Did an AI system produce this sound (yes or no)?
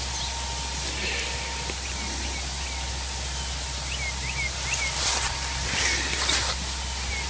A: no